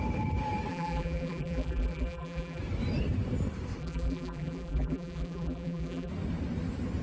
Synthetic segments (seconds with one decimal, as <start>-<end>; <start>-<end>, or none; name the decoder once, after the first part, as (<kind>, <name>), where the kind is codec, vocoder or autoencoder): 0.7-2.6 (vocoder, BigVGAN v2); 3.8-6.1